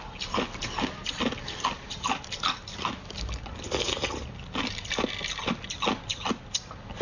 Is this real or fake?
real